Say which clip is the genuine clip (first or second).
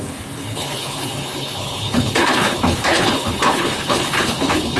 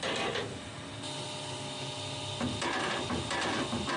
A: second